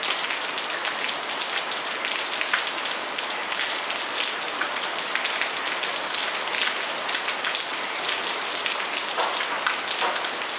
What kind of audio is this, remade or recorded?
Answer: recorded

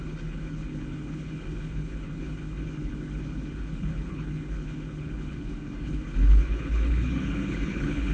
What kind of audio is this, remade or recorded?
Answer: remade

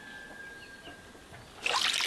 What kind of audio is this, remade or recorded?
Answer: recorded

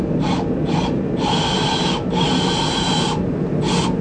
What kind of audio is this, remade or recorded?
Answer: recorded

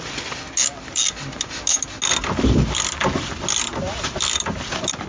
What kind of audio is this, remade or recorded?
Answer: recorded